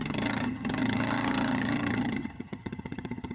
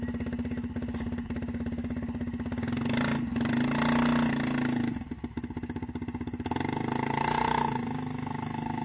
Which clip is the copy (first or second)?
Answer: first